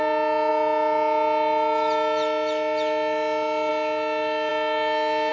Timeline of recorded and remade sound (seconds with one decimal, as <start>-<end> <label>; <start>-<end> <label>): 0.0-5.3 recorded